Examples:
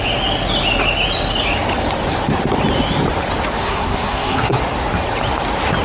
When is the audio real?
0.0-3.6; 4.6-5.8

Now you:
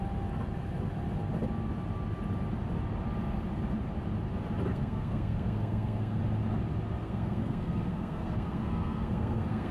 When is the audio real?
0.0-4.7; 6.2-7.0

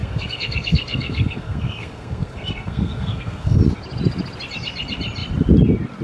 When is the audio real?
3.6-6.0

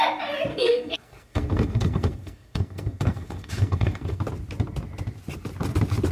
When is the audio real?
0.0-0.5; 4.2-6.1